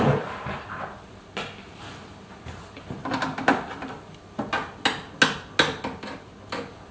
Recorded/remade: recorded